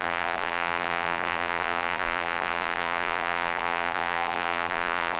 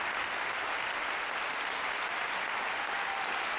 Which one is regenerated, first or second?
first